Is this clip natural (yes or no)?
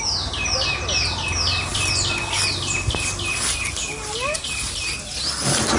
yes